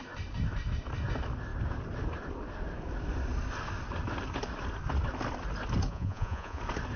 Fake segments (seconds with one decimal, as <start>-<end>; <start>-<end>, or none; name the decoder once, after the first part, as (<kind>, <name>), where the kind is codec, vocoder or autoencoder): 5.9-6.6 (vocoder, Vocos)